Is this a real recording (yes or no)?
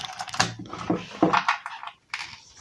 yes